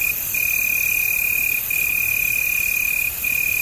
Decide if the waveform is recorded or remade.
recorded